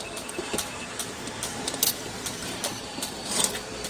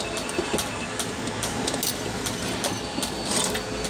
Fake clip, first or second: first